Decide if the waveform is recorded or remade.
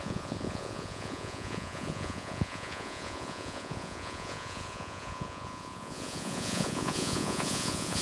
remade